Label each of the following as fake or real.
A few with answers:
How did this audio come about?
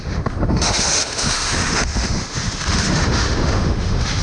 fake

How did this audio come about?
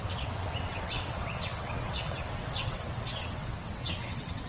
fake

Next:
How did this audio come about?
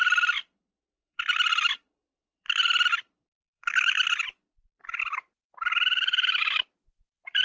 fake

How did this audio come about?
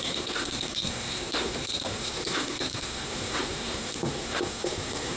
fake